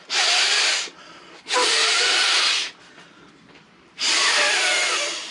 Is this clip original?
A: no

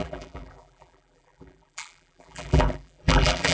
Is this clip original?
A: no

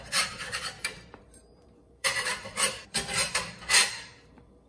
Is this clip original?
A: no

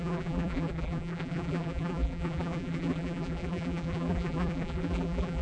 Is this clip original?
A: no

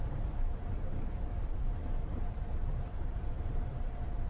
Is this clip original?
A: no